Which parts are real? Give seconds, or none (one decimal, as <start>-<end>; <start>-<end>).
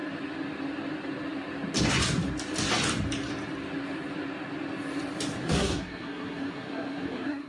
0.0-5.4